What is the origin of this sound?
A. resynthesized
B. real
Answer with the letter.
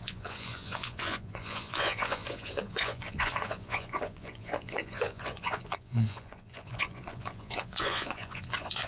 A